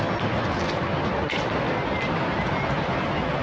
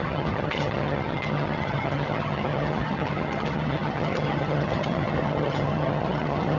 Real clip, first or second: first